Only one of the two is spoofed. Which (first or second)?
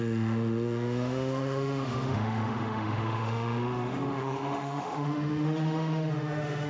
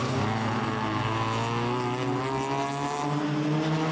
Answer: first